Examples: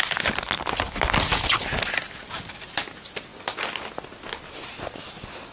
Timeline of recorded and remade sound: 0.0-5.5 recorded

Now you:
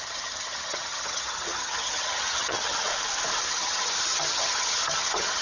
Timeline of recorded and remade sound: 0.0-2.9 remade; 2.9-3.5 recorded; 3.5-5.4 remade

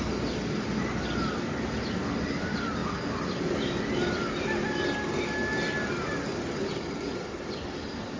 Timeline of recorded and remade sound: 0.0-8.2 recorded

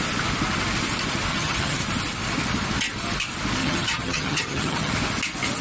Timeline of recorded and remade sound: 0.0-1.3 recorded; 1.3-1.8 remade; 1.8-3.6 recorded; 3.6-4.9 remade; 4.9-5.6 recorded

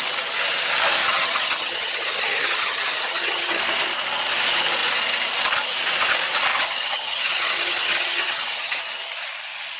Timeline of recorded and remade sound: 0.0-1.0 recorded; 1.0-3.6 remade; 3.6-6.5 recorded; 6.5-8.8 remade; 8.8-9.8 recorded

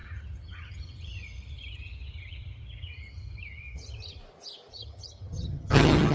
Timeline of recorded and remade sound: 0.0-4.2 remade; 4.2-4.7 recorded; 4.7-6.1 remade

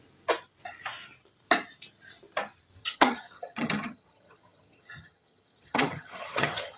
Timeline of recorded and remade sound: 0.0-2.8 recorded; 2.8-6.8 remade

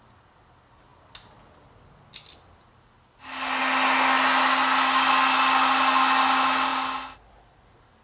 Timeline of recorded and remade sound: 0.0-8.0 recorded